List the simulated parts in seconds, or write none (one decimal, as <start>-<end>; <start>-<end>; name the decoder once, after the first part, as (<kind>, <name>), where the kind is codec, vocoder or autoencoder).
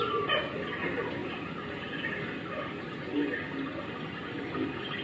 none